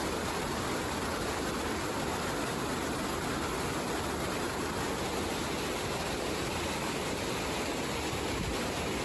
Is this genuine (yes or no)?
yes